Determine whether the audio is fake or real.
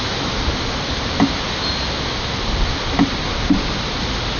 real